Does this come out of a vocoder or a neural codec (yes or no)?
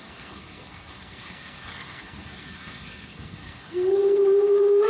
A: yes